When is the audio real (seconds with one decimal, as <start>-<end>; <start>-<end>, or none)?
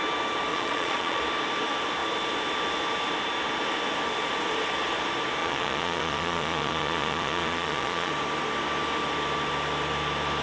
0.0-0.5; 1.2-5.4; 8.1-10.4